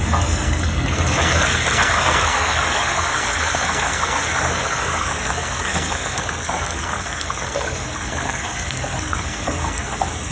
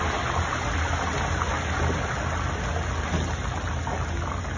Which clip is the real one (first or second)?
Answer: second